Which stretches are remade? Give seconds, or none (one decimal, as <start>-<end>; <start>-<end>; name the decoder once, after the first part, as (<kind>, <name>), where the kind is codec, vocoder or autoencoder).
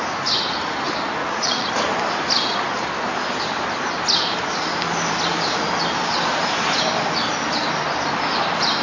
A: 1.2-1.7 (vocoder, Vocos)